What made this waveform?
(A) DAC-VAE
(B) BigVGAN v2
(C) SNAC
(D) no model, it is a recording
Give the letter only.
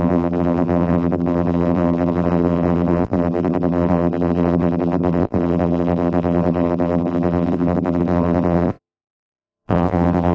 B